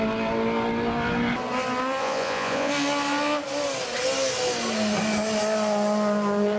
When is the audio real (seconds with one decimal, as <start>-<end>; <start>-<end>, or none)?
0.0-2.0; 2.7-6.6